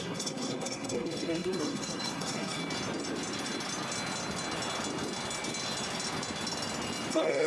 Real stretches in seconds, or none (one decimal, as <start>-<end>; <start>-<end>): 2.6-7.1